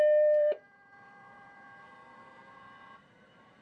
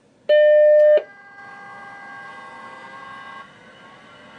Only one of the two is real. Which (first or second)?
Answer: second